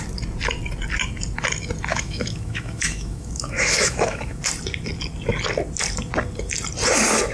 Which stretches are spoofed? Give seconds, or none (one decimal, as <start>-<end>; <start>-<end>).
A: 1.9-4.4